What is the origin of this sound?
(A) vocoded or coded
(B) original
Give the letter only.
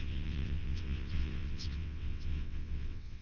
A